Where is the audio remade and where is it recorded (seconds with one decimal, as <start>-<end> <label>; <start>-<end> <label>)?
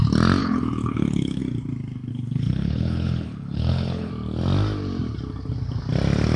0.0-0.4 recorded; 0.4-1.4 remade; 1.4-2.1 recorded; 2.1-4.1 remade; 4.1-6.4 recorded